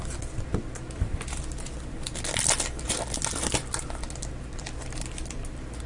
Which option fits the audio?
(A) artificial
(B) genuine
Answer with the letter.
B